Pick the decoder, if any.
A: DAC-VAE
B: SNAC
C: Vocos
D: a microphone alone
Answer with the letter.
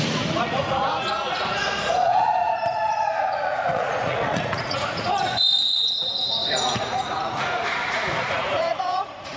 C